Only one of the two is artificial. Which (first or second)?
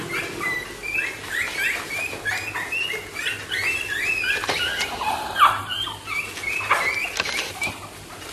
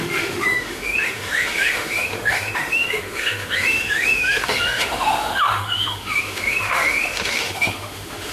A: second